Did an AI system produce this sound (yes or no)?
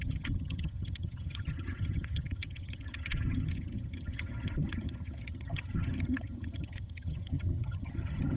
yes